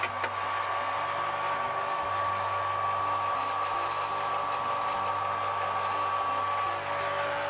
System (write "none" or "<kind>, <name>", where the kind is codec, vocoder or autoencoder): none